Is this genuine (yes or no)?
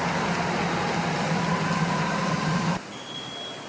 yes